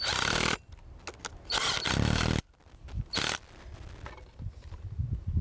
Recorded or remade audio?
recorded